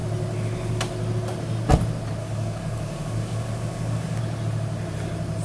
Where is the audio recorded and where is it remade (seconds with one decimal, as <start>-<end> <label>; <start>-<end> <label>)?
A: 0.0-2.2 recorded; 2.2-4.2 remade; 4.2-5.4 recorded